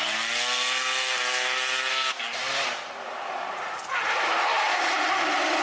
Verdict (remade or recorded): recorded